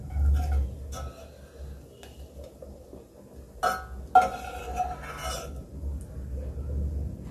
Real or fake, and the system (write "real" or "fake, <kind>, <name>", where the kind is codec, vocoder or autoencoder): real